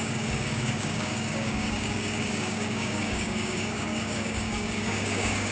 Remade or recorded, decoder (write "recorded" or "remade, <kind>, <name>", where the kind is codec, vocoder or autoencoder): remade, codec, DAC